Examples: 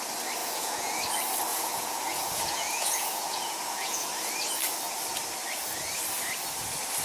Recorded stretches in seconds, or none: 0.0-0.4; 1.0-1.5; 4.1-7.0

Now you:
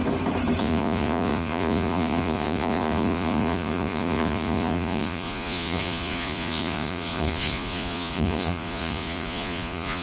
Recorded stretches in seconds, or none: 0.0-0.6

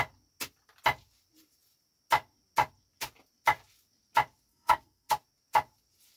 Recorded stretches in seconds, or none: 0.0-4.5; 5.1-6.2

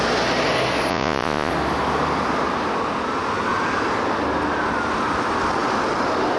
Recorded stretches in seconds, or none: 0.0-0.9; 1.5-6.4

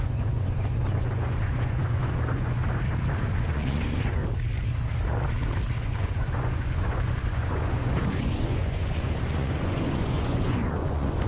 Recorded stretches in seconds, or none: 2.6-3.3; 4.2-5.8